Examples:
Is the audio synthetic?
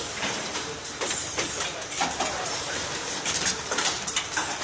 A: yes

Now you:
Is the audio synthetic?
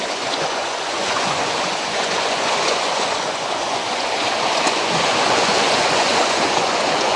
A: yes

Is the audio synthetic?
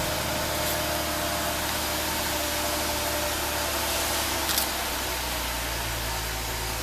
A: no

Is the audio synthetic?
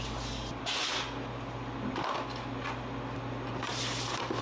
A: no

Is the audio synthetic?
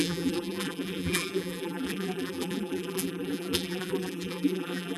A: yes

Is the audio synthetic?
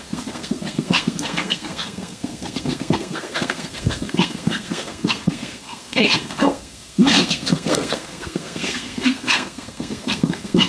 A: yes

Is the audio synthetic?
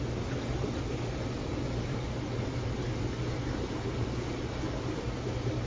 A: no